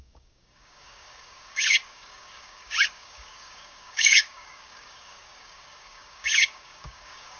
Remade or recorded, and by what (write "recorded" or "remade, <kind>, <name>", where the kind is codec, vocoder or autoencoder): remade, codec, DAC